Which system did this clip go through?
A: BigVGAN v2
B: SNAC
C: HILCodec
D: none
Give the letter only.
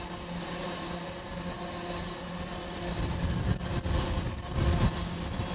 D